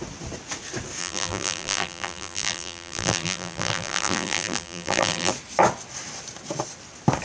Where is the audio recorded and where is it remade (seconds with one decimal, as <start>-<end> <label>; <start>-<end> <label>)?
0.0-1.0 recorded; 1.0-5.3 remade; 5.3-7.2 recorded

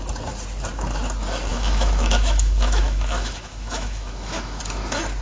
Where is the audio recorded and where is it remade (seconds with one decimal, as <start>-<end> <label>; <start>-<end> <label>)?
0.0-1.5 recorded; 1.5-4.6 remade; 4.6-5.2 recorded

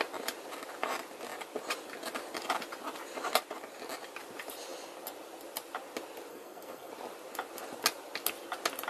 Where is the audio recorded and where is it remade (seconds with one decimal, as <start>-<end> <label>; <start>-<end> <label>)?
0.0-6.3 recorded; 6.3-6.9 remade; 6.9-8.9 recorded

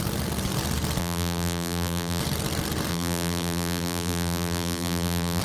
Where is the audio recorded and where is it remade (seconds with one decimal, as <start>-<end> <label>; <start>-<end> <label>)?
0.0-1.0 recorded; 1.0-2.2 remade; 2.2-2.9 recorded; 2.9-5.4 remade

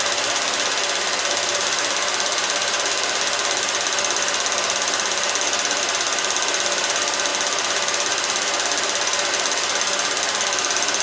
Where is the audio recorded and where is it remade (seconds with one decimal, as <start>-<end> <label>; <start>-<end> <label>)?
0.0-11.0 recorded